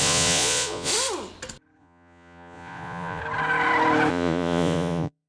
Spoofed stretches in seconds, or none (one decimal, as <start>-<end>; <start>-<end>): 0.0-0.9; 1.8-3.2; 4.1-5.3